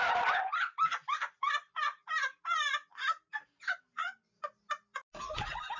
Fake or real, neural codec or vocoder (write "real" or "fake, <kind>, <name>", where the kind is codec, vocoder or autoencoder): real